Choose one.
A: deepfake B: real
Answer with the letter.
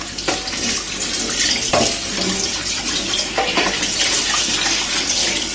B